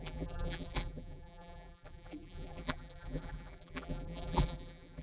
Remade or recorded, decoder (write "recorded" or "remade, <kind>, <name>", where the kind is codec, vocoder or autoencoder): remade, vocoder, BigVGAN v2